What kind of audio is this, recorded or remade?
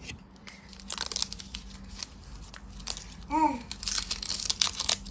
recorded